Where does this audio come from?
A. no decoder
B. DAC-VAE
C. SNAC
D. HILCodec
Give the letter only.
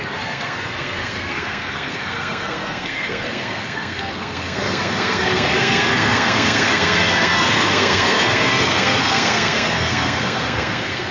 C